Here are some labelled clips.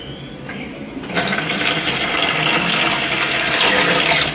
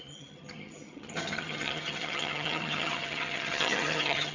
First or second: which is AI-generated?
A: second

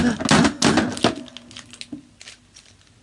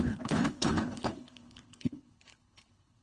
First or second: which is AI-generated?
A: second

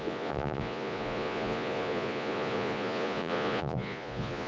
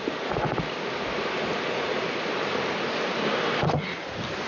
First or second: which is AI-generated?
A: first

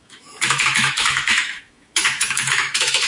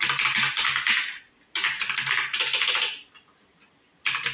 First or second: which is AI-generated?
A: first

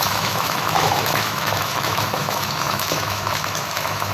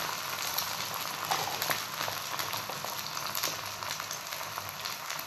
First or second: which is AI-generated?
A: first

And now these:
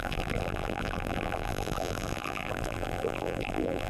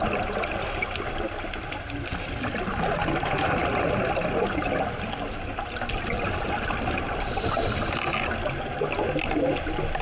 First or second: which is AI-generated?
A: first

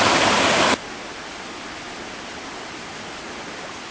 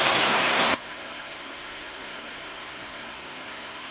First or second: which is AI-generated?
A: second